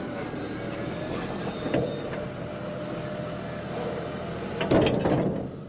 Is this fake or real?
real